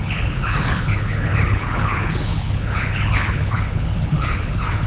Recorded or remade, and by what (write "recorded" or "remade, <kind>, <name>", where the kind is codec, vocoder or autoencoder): remade, codec, HILCodec